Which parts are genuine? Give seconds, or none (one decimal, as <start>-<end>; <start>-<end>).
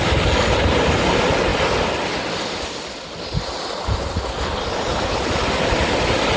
0.0-6.4